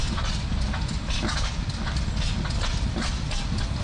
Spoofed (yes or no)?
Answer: no